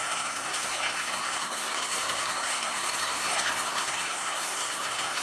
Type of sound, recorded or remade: remade